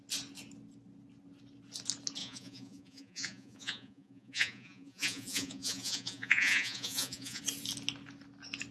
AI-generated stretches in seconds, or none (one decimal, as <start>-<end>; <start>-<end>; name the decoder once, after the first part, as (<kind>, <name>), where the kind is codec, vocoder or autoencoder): 2.2-7.4 (vocoder, Vocos)